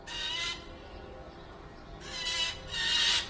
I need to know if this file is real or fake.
real